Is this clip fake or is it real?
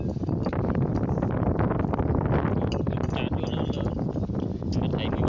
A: real